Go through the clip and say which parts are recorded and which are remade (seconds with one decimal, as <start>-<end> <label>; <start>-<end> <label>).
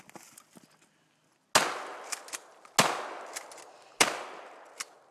0.0-5.1 recorded